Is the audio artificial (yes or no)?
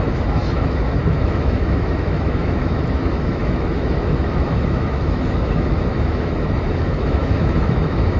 yes